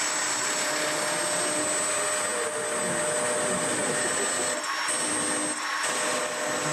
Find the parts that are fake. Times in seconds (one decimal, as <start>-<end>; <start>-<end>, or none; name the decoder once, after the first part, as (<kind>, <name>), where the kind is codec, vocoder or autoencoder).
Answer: none